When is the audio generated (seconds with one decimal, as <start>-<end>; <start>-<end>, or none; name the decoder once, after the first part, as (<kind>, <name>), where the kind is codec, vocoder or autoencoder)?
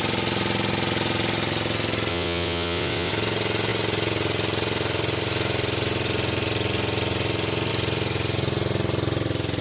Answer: 2.1-3.1 (vocoder, WaveNeXt)